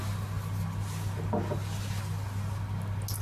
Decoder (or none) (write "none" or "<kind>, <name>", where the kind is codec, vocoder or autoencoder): none